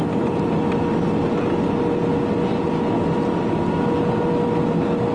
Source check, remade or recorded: recorded